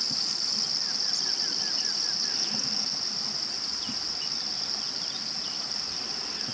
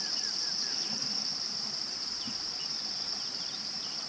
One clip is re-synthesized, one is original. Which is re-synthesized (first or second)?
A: second